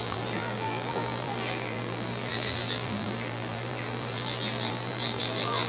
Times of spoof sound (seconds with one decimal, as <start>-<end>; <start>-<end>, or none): 0.0-5.7